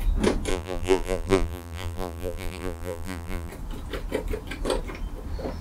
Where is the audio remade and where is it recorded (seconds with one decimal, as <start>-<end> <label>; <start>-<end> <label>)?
0.0-0.5 recorded; 0.5-3.5 remade; 3.5-5.6 recorded